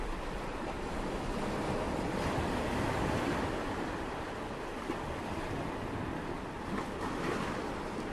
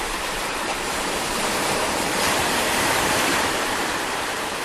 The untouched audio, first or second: first